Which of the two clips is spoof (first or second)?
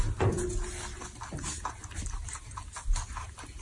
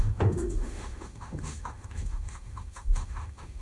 second